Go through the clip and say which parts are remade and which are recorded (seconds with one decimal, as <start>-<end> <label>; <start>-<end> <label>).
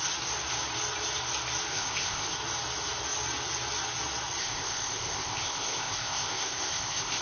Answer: 0.0-1.7 recorded; 1.7-2.3 remade; 2.3-4.4 recorded; 4.4-7.2 remade